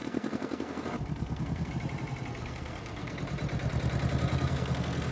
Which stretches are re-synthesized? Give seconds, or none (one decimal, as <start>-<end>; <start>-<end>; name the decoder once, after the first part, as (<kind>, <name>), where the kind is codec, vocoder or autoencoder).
0.0-1.7 (codec, SNAC); 2.4-3.2; 4.3-5.1